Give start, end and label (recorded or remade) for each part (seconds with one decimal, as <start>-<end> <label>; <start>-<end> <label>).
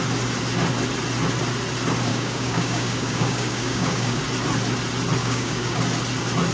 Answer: 0.0-2.1 recorded; 2.1-4.2 remade; 4.2-5.2 recorded; 5.2-5.8 remade; 5.8-6.5 recorded